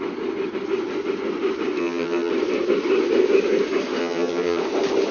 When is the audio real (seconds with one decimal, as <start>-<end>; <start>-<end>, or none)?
0.0-1.8; 2.3-4.0; 4.6-5.1